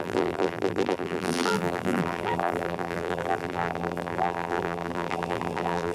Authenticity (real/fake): fake